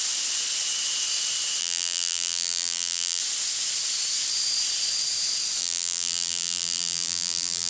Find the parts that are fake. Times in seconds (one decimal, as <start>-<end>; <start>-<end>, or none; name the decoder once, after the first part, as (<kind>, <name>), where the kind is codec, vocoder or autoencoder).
1.6-3.2 (vocoder, BigVGAN v2); 5.6-7.7